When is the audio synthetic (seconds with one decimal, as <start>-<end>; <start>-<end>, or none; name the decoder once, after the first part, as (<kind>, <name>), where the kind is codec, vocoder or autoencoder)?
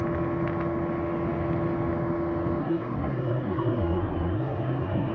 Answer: 2.6-5.1 (codec, SNAC)